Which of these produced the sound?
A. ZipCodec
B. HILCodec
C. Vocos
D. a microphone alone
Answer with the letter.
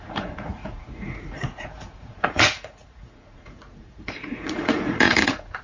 C